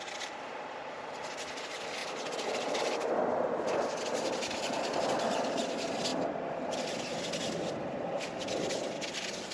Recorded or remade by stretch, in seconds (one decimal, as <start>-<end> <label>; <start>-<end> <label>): 0.0-9.5 recorded